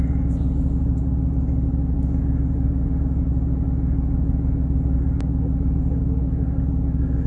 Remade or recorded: recorded